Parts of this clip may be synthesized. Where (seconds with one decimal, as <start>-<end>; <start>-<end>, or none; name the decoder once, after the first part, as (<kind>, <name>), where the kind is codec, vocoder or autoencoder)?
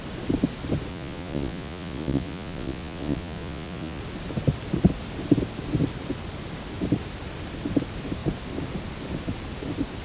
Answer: 0.9-4.0 (vocoder, Vocos)